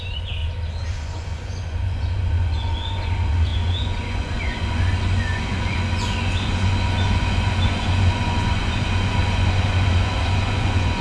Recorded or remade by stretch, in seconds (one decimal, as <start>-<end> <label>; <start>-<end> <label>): 0.0-0.4 remade; 0.4-0.9 recorded; 0.9-11.0 remade